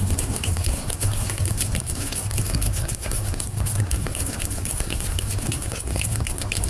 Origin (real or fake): fake